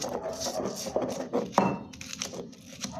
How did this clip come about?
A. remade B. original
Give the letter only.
B